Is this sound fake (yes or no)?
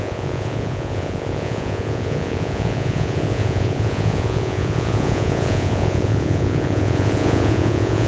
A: yes